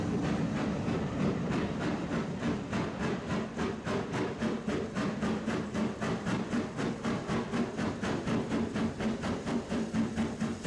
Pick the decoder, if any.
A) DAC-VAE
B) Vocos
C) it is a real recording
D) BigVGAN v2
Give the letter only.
D